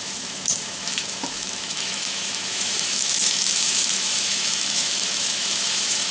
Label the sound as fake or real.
fake